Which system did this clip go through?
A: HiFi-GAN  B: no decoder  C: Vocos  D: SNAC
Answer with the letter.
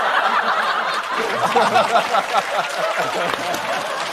B